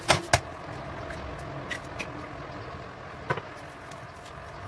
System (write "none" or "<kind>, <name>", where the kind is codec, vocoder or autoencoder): none